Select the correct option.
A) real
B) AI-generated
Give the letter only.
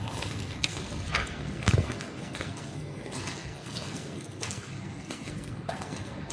B